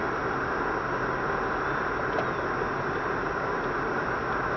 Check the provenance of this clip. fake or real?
real